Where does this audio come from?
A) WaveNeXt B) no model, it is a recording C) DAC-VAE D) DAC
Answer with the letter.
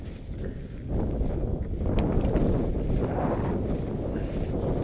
B